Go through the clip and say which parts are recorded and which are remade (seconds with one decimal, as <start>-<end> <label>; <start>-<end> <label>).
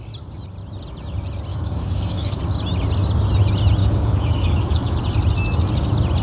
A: 0.0-1.5 recorded; 1.5-2.4 remade; 2.4-3.8 recorded; 3.8-5.0 remade; 5.0-6.2 recorded